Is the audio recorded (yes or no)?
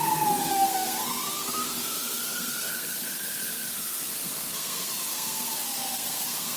no